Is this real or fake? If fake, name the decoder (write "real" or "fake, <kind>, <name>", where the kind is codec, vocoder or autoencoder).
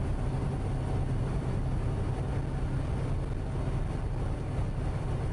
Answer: real